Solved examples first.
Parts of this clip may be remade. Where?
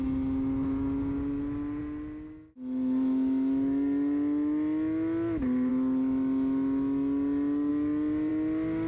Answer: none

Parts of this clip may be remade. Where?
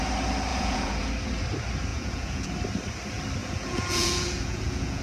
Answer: 0.5-1.1 (vocoder, Vocos); 1.9-2.5; 3.4-5.0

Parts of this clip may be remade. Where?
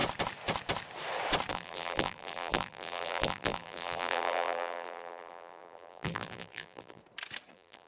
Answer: 1.5-7.0 (vocoder, BigVGAN v2); 7.5-7.9